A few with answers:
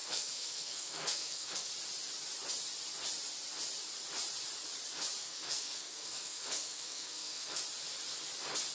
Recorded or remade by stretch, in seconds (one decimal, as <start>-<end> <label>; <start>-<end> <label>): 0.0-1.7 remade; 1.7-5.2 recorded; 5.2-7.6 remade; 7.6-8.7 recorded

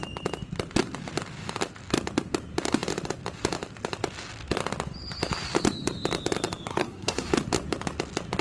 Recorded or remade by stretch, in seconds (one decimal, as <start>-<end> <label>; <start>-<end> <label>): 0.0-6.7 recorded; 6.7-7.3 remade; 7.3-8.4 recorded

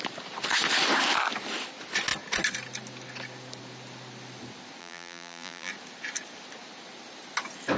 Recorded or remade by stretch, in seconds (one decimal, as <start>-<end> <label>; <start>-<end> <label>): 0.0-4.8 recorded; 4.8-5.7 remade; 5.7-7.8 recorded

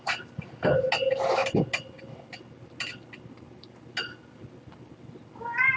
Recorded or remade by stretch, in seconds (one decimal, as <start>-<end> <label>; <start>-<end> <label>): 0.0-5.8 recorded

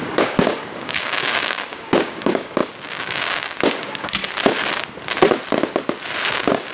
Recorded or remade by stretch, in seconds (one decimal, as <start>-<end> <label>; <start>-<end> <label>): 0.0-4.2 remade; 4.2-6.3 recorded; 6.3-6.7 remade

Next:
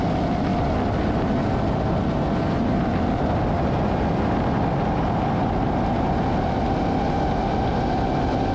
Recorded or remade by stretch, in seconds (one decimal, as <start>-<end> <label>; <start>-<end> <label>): 0.0-8.5 recorded

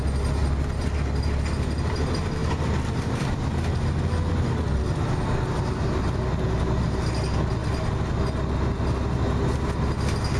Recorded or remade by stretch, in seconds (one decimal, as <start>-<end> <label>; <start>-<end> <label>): 0.0-10.4 recorded

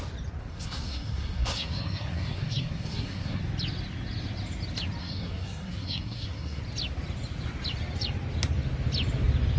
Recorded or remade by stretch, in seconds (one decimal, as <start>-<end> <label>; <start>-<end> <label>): 0.0-0.5 recorded; 0.5-3.4 remade; 3.4-5.0 recorded; 5.0-6.6 remade; 6.6-9.6 recorded